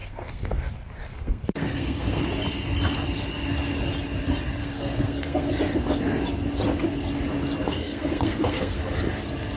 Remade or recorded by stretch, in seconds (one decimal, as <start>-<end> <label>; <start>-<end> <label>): 0.0-0.7 remade; 0.7-1.1 recorded; 1.1-2.2 remade; 2.2-4.6 recorded; 4.6-5.5 remade; 5.5-7.7 recorded; 7.7-8.8 remade; 8.8-9.6 recorded